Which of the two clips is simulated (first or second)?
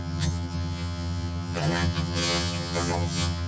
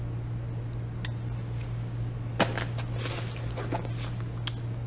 first